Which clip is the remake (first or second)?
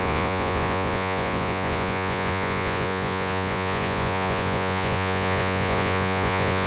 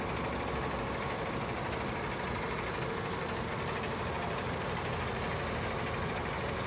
first